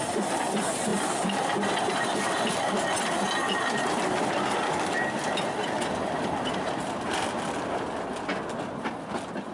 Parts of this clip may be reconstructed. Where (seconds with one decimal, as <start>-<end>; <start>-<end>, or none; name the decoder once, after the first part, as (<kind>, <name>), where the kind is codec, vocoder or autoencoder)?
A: none